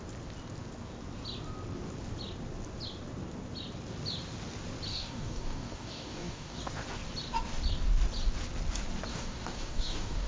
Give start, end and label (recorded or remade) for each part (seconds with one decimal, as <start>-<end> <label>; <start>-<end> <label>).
0.0-4.9 recorded; 4.9-6.6 remade; 6.6-9.1 recorded; 9.1-10.3 remade